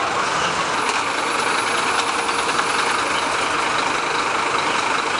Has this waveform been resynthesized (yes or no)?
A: no